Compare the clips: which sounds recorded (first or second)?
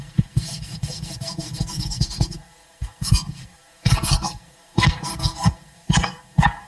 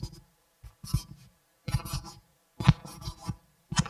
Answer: second